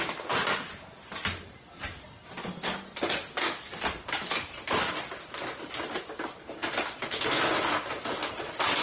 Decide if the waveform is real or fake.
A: real